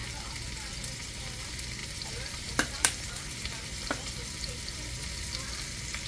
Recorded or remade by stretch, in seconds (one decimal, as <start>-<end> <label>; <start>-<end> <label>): 0.0-1.8 recorded; 1.8-5.3 remade; 5.3-6.1 recorded